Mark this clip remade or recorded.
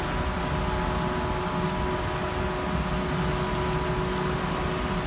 recorded